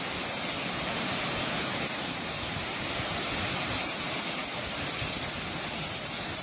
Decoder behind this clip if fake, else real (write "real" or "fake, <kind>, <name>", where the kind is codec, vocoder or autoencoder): fake, vocoder, BigVGAN v2